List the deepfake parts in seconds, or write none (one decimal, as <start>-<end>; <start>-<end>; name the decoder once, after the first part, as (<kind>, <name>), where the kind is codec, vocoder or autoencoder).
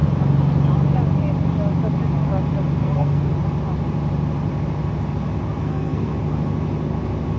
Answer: 2.8-3.3 (codec, SNAC); 5.6-6.2